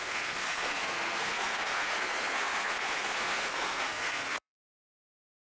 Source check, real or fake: fake